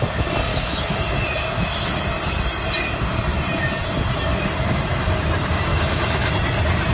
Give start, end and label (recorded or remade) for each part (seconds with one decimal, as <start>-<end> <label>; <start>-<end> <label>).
0.0-0.5 recorded; 0.5-1.1 remade; 1.1-5.7 recorded; 5.7-6.3 remade; 6.3-6.9 recorded